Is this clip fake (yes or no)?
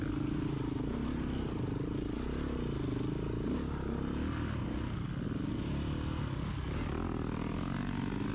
no